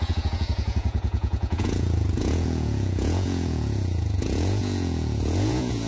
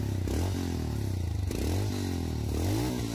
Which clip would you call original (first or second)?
second